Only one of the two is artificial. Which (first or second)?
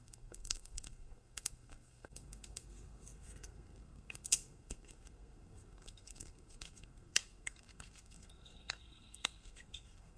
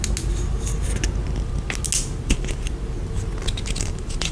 first